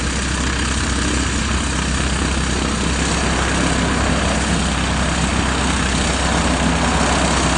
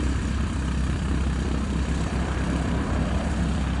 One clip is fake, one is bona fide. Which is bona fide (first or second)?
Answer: first